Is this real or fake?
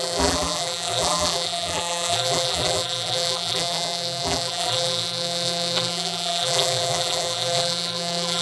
fake